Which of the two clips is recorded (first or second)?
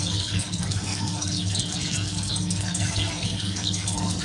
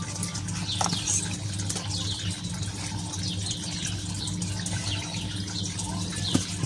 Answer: second